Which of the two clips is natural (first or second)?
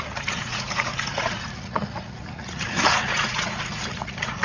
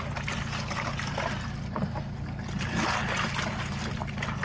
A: second